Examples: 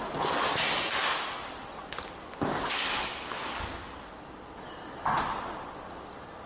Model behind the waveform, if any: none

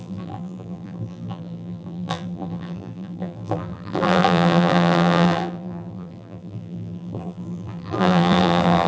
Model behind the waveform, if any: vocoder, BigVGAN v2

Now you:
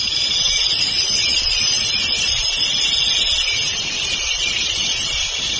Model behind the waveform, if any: none